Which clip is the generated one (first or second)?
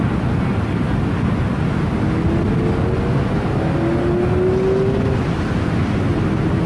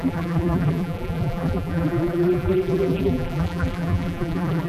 second